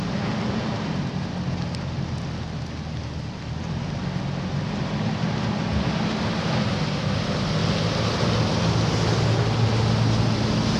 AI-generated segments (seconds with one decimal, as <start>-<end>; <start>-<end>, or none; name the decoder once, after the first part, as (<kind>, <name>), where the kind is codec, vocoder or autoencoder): none